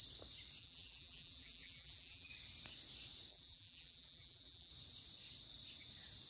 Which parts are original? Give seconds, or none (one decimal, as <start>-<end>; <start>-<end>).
0.0-0.6; 2.3-3.3; 4.7-6.3